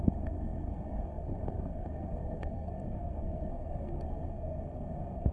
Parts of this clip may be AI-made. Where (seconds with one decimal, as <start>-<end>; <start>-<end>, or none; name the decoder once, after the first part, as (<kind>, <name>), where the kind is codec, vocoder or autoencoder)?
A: 0.0-5.3 (codec, SNAC)